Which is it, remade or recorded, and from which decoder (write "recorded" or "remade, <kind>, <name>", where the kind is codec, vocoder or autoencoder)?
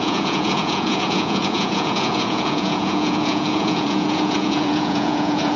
remade, vocoder, Vocos